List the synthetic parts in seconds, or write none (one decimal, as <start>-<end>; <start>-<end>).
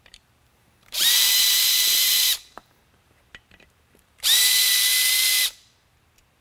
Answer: 0.0-4.9